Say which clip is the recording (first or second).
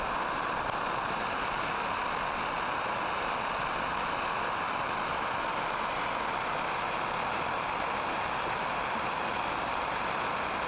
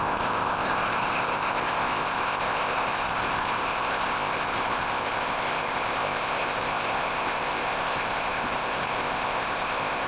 first